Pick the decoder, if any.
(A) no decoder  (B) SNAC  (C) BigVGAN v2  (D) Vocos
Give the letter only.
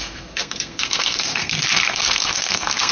B